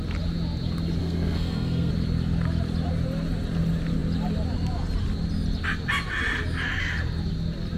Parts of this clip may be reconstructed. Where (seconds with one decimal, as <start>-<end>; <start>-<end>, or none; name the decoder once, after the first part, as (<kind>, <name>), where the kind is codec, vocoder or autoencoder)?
1.0-1.9 (codec, SNAC)